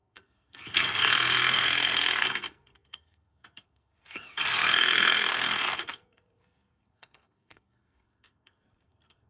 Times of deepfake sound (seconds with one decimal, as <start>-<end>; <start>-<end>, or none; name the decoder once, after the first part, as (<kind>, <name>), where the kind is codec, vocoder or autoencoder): 0.0-9.3 (codec, SNAC)